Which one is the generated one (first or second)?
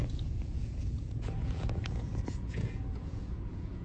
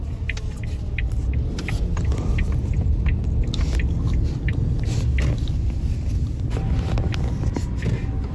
first